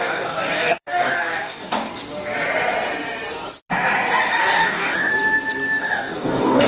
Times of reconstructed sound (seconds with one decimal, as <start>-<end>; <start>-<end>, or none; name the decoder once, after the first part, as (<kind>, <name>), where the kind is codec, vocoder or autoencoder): 0.0-1.9 (codec, DAC); 4.4-5.1; 5.8-6.7